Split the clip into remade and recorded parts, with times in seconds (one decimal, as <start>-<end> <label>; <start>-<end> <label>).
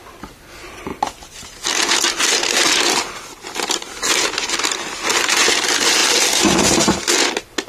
0.0-7.7 recorded